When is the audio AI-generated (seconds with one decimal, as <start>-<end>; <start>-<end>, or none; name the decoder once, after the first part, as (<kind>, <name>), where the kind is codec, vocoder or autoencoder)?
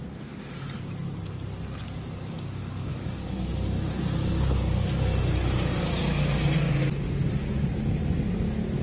2.9-3.5 (codec, DAC)